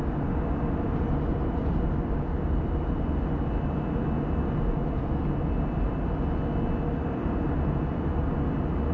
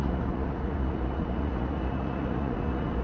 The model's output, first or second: second